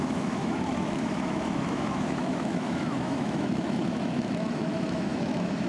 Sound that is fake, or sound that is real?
fake